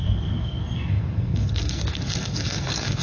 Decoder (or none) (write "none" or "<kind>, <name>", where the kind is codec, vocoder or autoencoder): codec, SNAC